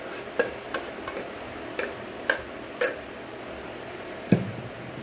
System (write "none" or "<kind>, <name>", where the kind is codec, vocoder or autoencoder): none